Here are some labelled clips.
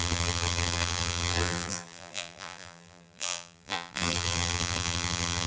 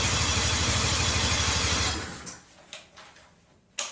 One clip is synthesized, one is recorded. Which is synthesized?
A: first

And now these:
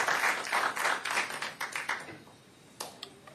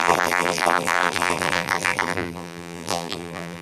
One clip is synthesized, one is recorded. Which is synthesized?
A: second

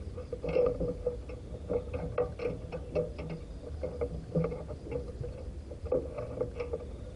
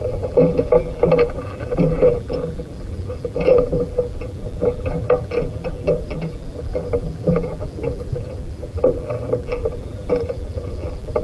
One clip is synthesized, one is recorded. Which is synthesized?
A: second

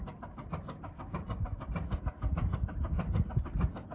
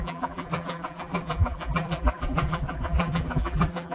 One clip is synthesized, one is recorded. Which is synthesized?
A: second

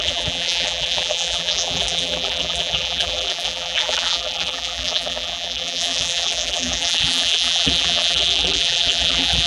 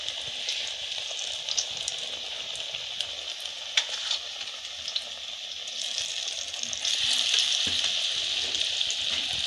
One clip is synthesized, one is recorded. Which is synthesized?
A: first